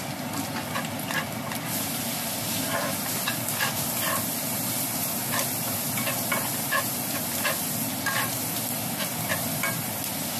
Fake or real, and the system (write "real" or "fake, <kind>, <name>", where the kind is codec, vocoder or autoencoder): real